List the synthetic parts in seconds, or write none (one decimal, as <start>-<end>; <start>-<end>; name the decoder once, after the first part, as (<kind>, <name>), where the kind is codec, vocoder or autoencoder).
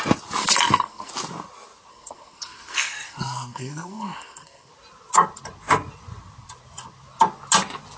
0.4-1.1 (codec, SNAC); 1.9-4.7